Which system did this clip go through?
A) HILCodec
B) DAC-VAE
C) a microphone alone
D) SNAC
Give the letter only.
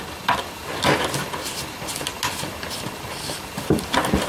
C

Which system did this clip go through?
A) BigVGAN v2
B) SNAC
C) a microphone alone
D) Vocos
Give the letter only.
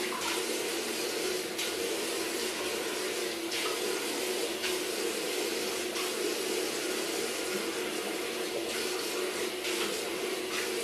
C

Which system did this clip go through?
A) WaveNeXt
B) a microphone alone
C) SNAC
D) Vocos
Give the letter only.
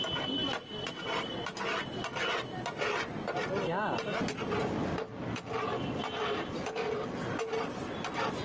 B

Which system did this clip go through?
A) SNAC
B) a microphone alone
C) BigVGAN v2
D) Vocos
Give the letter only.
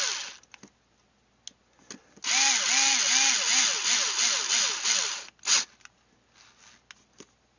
B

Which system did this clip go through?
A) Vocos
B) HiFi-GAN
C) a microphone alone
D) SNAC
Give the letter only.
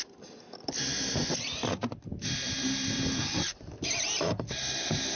C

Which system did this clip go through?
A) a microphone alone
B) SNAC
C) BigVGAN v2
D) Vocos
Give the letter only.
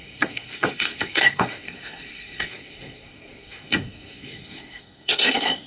B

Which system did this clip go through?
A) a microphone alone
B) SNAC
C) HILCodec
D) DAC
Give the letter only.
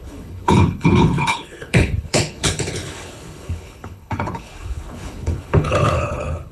C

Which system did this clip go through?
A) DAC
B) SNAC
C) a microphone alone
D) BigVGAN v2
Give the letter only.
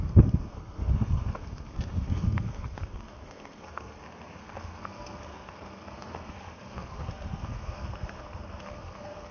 B